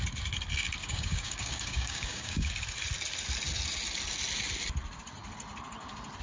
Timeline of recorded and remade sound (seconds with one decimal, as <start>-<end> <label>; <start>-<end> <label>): 0.0-0.8 recorded; 0.8-2.5 remade; 2.5-6.2 recorded